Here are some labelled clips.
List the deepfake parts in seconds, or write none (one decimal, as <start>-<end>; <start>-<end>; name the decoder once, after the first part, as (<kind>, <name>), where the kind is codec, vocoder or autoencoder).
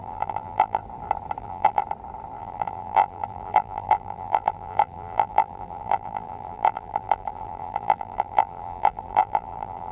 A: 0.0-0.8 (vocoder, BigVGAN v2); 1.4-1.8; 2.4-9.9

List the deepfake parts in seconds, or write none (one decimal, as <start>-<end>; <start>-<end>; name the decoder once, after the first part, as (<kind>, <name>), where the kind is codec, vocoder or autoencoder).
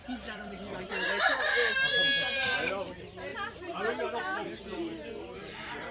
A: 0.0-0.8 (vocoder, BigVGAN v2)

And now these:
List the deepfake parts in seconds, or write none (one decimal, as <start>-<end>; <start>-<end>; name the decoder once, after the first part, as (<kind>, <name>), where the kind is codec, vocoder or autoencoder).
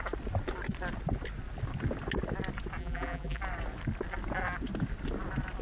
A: 2.8-3.4 (vocoder, BigVGAN v2)